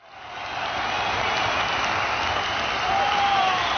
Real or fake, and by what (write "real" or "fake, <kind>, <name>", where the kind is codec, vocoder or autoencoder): real